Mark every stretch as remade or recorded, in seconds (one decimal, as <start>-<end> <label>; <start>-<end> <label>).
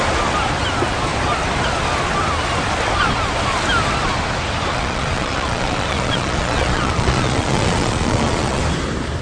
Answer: 0.0-4.7 recorded; 4.7-8.6 remade; 8.6-9.2 recorded